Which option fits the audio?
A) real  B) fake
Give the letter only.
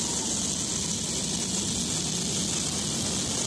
A